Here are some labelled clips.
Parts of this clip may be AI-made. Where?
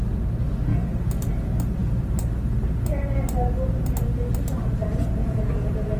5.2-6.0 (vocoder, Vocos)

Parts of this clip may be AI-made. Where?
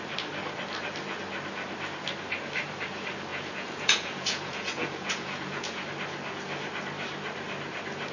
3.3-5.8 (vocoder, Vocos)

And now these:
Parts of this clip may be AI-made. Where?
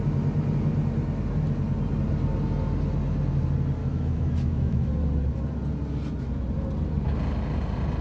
3.8-4.9 (autoencoder, DAC-VAE)